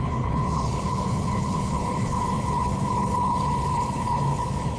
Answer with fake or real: fake